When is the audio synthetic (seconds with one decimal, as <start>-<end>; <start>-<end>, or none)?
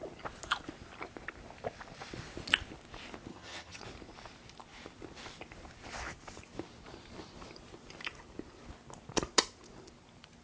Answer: 3.3-3.8